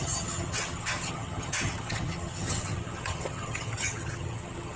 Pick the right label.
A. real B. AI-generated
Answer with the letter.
B